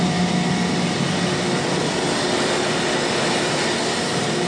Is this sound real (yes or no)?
yes